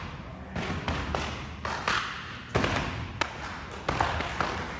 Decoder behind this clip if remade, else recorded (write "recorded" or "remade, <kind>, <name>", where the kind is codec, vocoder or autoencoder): recorded